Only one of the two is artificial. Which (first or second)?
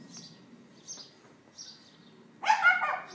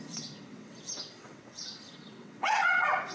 second